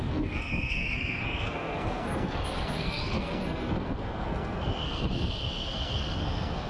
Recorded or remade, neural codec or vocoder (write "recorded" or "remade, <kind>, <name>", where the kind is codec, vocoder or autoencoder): remade, codec, SNAC